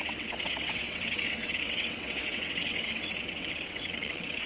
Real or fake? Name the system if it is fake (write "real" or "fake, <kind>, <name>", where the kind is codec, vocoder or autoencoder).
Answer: fake, vocoder, WaveNeXt